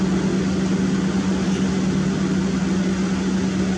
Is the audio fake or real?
real